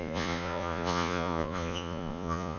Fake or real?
fake